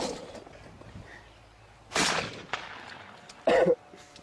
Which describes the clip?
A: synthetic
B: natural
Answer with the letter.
B